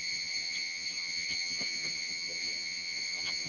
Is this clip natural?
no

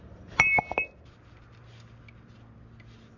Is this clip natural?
yes